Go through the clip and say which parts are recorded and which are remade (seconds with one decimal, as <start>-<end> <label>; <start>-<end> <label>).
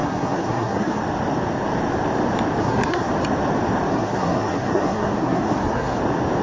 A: 0.0-1.0 remade; 1.0-2.6 recorded; 2.6-3.1 remade; 3.1-3.9 recorded; 3.9-6.0 remade; 6.0-6.4 recorded